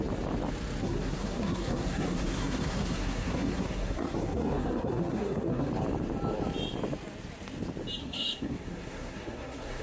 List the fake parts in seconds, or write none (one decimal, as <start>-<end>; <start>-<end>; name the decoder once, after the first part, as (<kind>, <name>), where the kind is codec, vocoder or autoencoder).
0.8-5.7 (codec, SNAC); 8.0-9.8